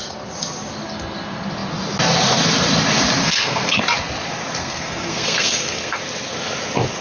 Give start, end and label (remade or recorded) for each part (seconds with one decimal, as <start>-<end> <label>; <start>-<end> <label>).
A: 0.0-3.2 recorded; 3.2-3.8 remade; 3.8-4.6 recorded; 4.6-6.0 remade; 6.0-7.0 recorded